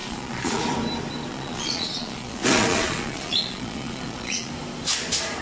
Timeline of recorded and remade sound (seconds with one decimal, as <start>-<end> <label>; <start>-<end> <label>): 0.0-0.6 remade; 0.6-1.3 recorded; 1.3-4.5 remade; 4.5-5.4 recorded